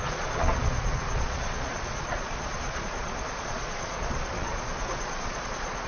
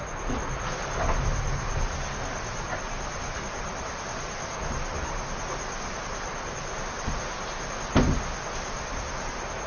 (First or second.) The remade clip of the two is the first